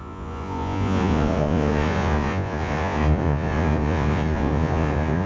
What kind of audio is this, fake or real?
fake